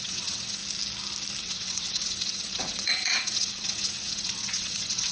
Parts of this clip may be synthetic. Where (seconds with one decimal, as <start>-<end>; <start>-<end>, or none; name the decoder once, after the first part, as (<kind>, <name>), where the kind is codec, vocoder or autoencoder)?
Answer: 0.0-0.6 (vocoder, WaveNeXt); 1.4-5.1

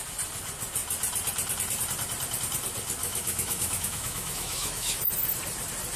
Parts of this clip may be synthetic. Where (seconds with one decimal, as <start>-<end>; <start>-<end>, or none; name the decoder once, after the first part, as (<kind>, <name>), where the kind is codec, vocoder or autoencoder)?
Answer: 3.0-5.1 (autoencoder, DAC-VAE)